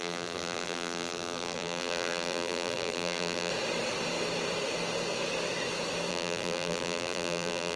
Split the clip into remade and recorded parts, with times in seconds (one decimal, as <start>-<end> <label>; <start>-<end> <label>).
0.0-3.5 remade; 3.5-6.1 recorded; 6.1-7.8 remade